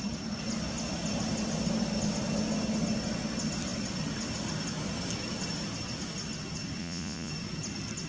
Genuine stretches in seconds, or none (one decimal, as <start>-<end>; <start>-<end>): 0.0-6.8; 7.3-8.1

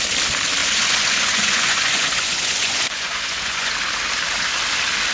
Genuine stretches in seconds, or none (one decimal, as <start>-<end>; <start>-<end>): 0.0-0.6; 3.7-5.1

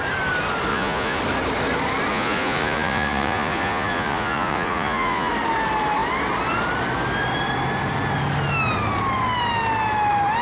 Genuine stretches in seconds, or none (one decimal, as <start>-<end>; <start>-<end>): 0.0-0.7; 1.2-2.1; 5.3-10.4

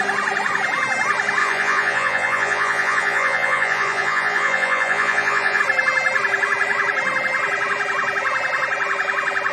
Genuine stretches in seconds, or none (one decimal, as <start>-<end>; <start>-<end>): 0.0-1.4; 5.6-9.5

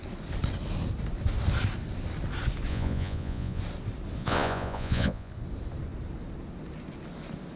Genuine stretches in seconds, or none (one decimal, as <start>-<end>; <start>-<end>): 0.0-2.7; 3.6-4.2; 5.3-7.6

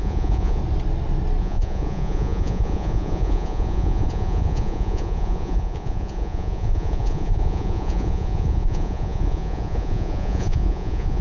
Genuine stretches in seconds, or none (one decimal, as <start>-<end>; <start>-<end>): 0.6-1.4